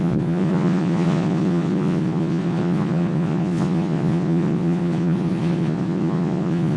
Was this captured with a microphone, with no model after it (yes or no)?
no